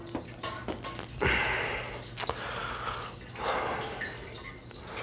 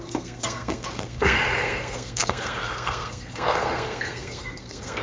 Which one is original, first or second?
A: first